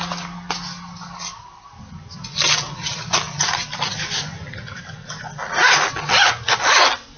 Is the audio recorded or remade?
recorded